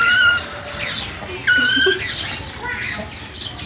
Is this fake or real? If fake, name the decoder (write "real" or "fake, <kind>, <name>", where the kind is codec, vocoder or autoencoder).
real